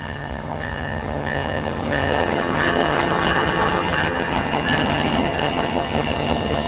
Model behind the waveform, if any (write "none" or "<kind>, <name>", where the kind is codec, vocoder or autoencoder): vocoder, HiFi-GAN